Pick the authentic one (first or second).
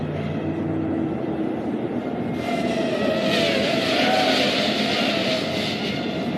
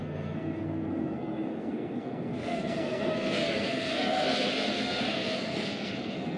first